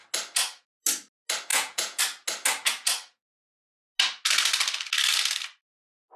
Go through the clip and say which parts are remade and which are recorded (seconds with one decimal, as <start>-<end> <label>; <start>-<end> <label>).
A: 0.0-1.5 recorded; 1.5-2.0 remade; 2.0-6.2 recorded